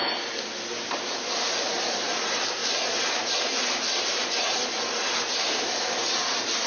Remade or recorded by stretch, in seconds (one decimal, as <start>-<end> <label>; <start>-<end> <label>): 0.0-0.7 recorded; 0.7-6.7 remade